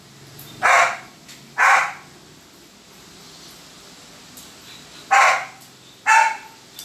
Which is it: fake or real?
real